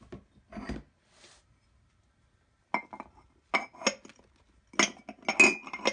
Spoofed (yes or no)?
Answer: no